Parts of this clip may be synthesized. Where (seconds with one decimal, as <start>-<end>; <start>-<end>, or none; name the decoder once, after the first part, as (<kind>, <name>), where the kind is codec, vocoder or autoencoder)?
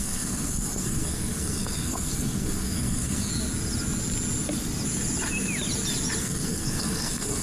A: 0.0-3.3 (codec, SNAC); 6.2-7.4